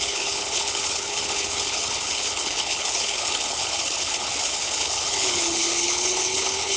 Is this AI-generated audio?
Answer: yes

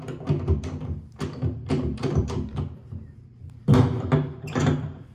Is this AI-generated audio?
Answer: yes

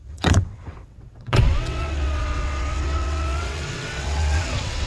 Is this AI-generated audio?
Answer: yes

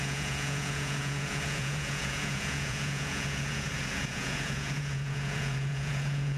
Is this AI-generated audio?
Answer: yes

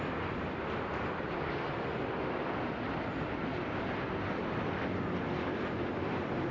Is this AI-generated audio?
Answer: no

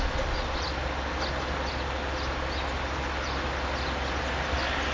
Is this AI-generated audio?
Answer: no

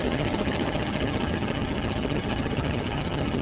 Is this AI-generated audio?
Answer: yes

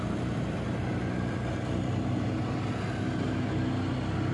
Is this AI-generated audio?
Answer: no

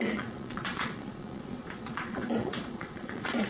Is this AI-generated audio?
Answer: yes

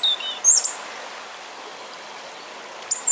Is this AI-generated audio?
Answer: no